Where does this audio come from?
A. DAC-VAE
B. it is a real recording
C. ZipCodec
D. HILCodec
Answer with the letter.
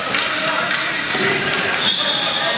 B